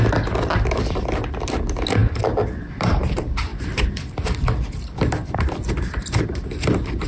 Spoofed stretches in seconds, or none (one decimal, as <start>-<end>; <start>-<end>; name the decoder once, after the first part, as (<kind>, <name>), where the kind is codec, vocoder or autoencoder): 2.0-3.0 (vocoder, BigVGAN v2); 3.5-5.7